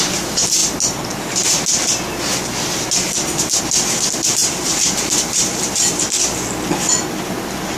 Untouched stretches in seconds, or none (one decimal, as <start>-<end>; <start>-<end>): 0.0-4.4; 6.0-7.8